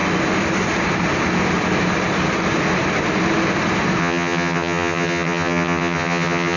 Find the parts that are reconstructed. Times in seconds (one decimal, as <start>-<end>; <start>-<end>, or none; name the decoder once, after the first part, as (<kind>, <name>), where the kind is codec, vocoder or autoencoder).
4.0-6.6 (vocoder, HiFi-GAN)